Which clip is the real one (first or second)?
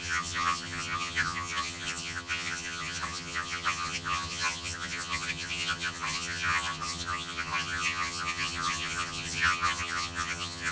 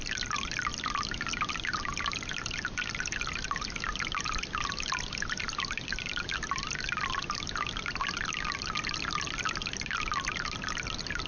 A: second